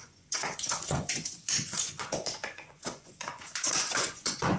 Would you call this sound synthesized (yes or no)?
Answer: yes